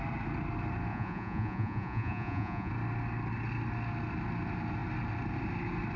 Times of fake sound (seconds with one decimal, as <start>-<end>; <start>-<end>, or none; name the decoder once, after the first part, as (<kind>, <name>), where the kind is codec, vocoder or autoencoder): 0.9-2.7 (vocoder, Vocos)